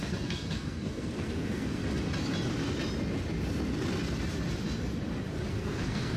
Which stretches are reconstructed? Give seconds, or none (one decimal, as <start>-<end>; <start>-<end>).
0.0-1.8; 5.5-6.2

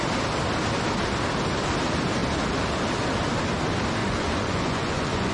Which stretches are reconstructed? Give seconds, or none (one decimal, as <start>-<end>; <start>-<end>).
4.0-5.3

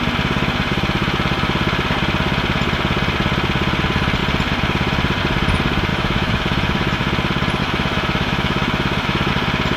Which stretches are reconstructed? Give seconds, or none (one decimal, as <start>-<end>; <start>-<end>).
5.9-7.0; 7.6-9.3

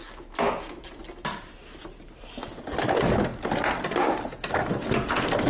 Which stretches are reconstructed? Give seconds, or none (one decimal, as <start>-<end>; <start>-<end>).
none

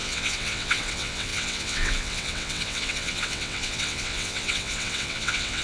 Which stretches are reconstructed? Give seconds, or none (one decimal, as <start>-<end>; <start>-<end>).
0.0-5.6

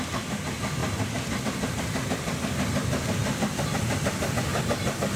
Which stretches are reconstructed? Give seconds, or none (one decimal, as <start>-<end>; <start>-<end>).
none

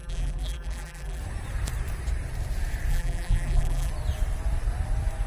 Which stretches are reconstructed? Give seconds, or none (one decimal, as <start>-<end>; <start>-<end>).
0.0-1.2; 2.9-3.9

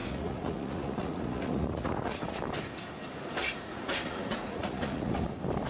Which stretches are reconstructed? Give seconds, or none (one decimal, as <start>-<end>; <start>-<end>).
0.0-2.4; 3.4-5.3